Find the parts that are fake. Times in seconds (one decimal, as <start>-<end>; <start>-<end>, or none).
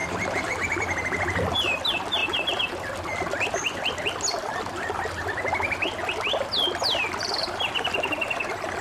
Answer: 0.0-0.7